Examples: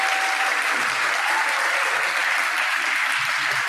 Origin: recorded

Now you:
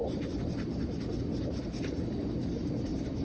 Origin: recorded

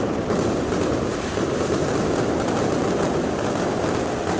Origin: recorded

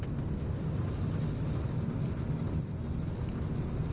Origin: recorded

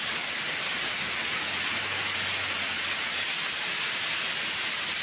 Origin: recorded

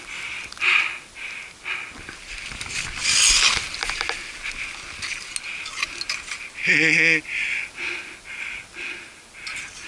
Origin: recorded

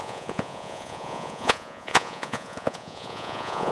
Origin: remade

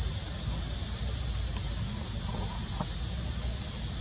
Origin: recorded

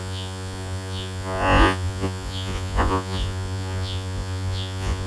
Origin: remade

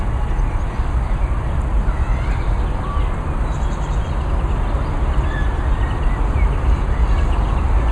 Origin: recorded